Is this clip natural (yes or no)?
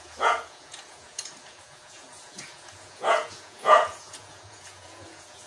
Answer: no